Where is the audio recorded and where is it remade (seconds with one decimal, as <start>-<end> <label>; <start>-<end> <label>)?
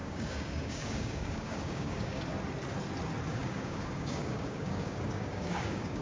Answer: 0.0-2.2 remade; 2.2-3.3 recorded; 3.3-6.0 remade